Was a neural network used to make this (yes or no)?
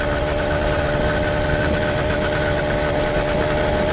no